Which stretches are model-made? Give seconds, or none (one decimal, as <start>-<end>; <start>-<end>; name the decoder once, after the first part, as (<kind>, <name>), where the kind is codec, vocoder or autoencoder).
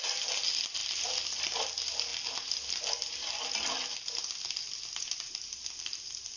0.8-1.6 (vocoder, BigVGAN v2)